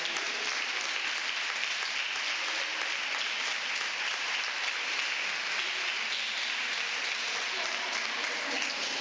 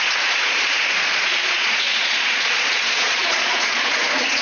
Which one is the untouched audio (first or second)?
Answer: first